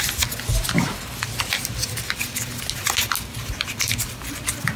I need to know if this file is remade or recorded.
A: recorded